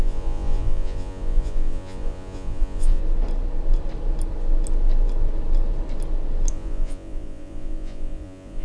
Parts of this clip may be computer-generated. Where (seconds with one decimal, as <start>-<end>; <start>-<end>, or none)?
0.0-3.0; 6.5-8.6